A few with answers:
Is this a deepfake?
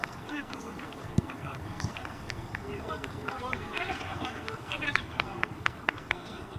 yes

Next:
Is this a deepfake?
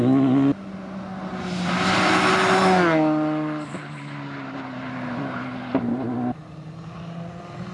no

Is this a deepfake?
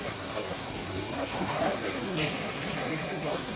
yes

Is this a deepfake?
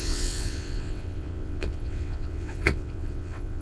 yes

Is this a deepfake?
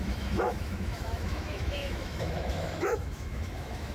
yes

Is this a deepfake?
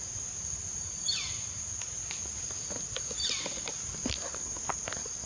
no